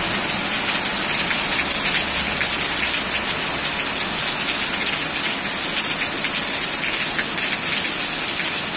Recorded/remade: recorded